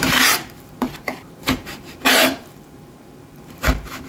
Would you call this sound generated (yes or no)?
yes